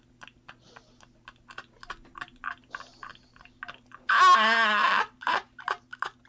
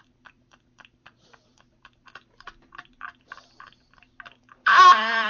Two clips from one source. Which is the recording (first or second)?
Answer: first